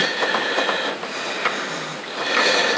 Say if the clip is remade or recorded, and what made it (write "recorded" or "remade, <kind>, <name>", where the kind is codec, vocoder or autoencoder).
recorded